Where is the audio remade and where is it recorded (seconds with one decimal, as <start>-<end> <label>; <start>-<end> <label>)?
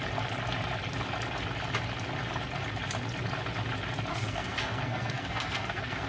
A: 0.0-4.1 recorded; 4.1-6.1 remade